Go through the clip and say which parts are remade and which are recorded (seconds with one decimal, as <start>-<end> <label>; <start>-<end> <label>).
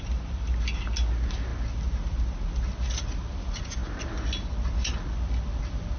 0.0-6.0 recorded